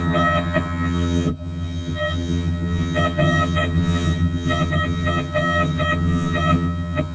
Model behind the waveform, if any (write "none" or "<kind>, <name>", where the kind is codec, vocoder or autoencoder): vocoder, HiFi-GAN